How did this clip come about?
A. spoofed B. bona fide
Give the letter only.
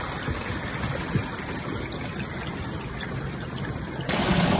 B